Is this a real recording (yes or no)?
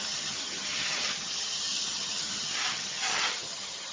no